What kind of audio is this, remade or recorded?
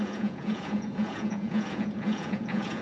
remade